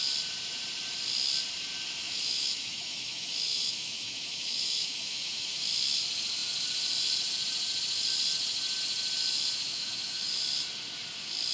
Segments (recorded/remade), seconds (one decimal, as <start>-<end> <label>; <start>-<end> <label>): 0.0-2.0 recorded; 2.0-5.6 remade; 5.6-9.7 recorded; 9.7-10.3 remade; 10.3-11.5 recorded